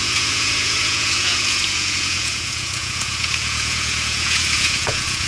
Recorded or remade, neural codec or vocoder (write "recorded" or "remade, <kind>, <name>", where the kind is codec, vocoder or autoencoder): remade, vocoder, Vocos